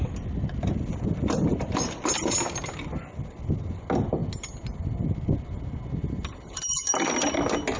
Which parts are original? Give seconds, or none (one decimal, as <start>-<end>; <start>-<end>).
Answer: 0.0-7.8